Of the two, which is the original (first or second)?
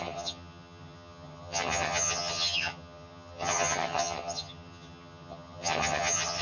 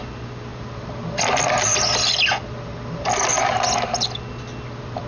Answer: second